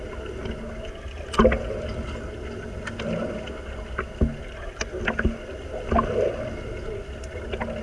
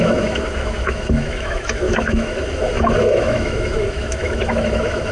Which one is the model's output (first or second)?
second